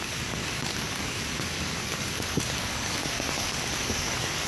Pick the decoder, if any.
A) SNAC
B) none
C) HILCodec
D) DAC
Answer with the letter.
D